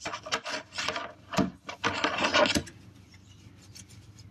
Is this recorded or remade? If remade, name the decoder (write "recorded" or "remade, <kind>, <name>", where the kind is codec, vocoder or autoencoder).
remade, vocoder, BigVGAN v2